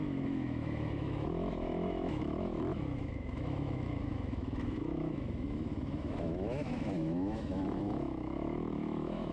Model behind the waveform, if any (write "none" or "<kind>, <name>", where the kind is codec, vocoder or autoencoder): autoencoder, DAC-VAE